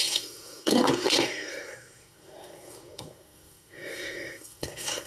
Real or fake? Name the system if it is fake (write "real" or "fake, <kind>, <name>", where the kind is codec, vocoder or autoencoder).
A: fake, codec, SNAC